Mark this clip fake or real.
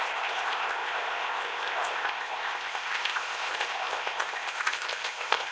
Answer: fake